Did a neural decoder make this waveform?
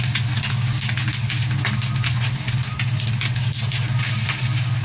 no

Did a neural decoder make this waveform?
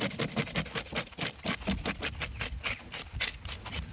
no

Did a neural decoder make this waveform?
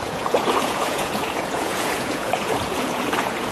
yes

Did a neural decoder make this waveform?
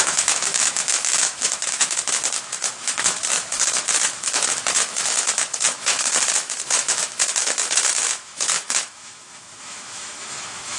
yes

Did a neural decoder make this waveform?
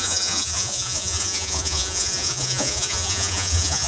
yes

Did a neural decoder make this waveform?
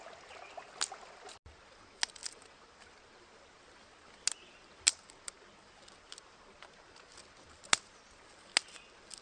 no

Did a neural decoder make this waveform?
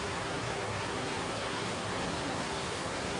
yes